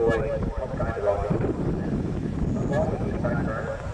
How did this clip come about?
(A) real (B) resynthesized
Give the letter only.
A